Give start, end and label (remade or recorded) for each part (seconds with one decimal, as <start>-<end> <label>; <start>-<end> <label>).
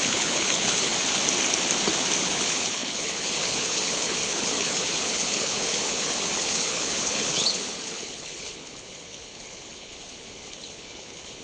0.0-0.9 remade; 0.9-2.2 recorded; 2.2-11.4 remade